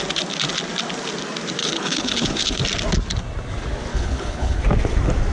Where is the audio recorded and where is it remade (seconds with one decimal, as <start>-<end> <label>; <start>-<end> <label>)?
0.0-1.6 recorded; 1.6-2.6 remade; 2.6-3.9 recorded; 3.9-4.6 remade; 4.6-5.3 recorded